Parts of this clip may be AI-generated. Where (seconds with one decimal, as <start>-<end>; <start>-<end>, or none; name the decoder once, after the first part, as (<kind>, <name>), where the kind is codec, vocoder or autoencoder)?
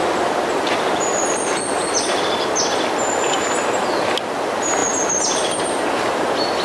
0.0-2.6 (vocoder, BigVGAN v2)